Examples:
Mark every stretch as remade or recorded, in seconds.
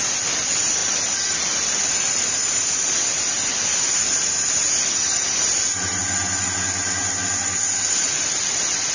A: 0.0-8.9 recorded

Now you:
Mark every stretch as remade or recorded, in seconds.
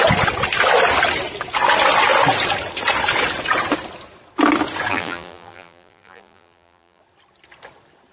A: 0.0-4.9 recorded; 4.9-7.0 remade; 7.0-8.1 recorded